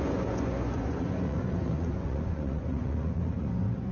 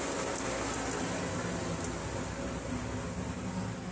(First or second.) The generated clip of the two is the first